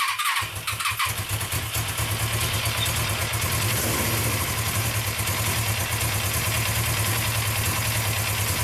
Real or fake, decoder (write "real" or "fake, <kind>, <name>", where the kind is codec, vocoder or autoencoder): real